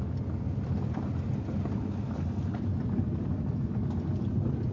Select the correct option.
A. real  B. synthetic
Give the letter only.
A